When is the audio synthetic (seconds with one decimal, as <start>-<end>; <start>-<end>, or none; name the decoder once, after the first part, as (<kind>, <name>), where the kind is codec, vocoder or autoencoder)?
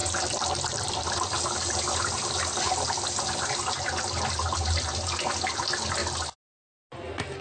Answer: none